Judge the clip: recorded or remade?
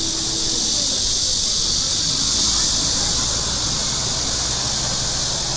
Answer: recorded